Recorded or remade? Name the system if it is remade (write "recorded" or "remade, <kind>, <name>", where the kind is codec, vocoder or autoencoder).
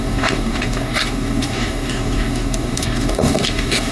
remade, codec, DAC